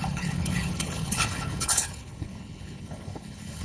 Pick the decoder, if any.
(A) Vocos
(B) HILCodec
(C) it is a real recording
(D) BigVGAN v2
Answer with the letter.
B